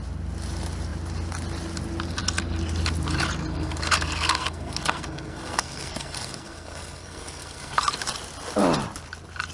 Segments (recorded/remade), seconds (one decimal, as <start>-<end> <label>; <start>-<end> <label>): 0.0-3.5 recorded; 3.5-7.8 remade; 7.8-9.5 recorded